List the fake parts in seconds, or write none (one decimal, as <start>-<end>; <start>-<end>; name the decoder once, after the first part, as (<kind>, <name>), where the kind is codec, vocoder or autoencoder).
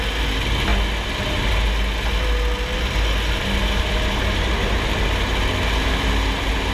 none